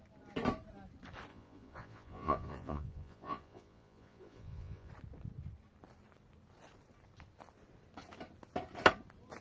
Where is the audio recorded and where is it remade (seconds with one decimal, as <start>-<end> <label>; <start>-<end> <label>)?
0.0-1.3 recorded; 1.3-4.9 remade; 4.9-9.4 recorded